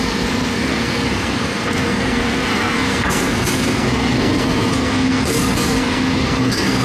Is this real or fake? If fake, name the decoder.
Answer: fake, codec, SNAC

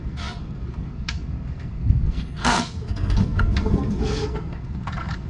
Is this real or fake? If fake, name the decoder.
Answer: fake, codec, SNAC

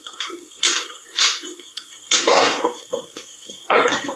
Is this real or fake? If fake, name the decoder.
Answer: fake, codec, SNAC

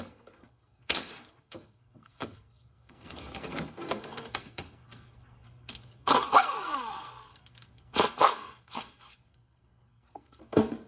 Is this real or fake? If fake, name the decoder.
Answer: fake, codec, SNAC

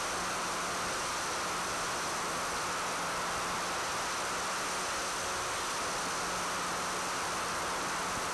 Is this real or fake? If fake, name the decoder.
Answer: real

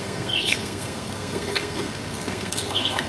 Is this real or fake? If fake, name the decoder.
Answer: fake, codec, SNAC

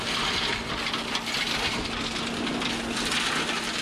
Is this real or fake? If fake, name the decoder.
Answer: real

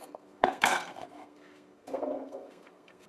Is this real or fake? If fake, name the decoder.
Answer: fake, codec, SNAC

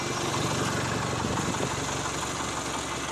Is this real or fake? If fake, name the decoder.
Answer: real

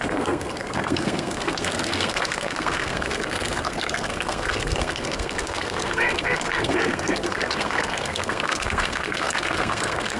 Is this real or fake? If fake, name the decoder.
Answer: fake, codec, SNAC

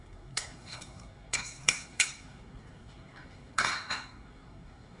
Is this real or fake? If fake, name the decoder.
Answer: fake, codec, SNAC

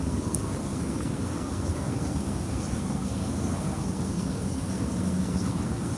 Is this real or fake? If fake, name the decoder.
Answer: fake, codec, SNAC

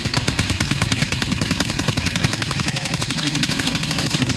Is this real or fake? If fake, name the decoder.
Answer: fake, codec, SNAC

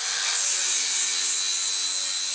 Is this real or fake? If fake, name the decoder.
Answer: real